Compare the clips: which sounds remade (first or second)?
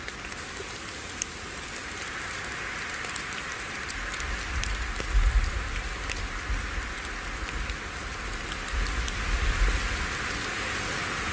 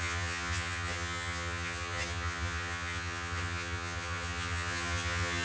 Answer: second